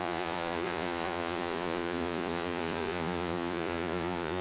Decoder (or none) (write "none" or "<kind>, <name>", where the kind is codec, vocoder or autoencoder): vocoder, Vocos